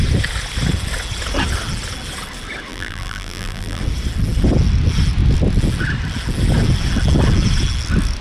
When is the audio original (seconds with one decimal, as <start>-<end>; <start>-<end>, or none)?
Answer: 0.0-2.7; 3.8-8.2